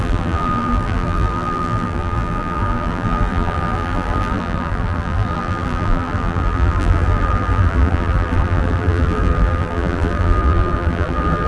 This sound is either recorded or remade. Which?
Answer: remade